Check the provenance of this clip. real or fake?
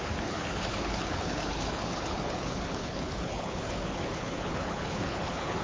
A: fake